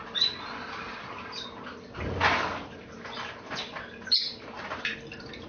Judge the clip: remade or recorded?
recorded